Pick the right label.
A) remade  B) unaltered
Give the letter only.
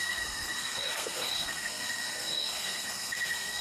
A